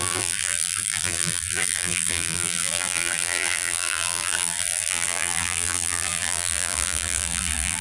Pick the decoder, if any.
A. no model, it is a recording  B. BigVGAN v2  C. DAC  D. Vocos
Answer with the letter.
B